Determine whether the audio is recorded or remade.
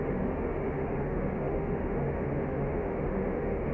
remade